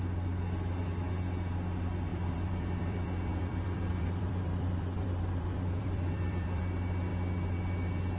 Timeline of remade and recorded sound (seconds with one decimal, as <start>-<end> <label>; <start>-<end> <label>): 0.0-2.1 recorded; 2.1-6.6 remade; 6.6-8.2 recorded